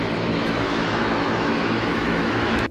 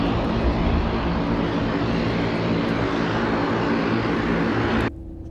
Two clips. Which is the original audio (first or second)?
second